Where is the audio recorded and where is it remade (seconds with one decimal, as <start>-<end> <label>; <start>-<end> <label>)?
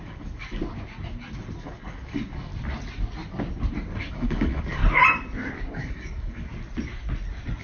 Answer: 0.0-0.6 remade; 0.6-1.6 recorded; 1.6-2.5 remade; 2.5-4.1 recorded; 4.1-4.8 remade; 4.8-5.6 recorded; 5.6-6.5 remade; 6.5-7.6 recorded